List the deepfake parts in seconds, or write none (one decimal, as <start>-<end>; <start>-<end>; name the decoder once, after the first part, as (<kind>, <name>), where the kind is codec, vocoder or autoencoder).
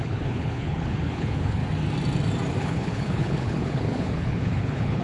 0.0-1.6 (codec, HILCodec); 2.6-5.0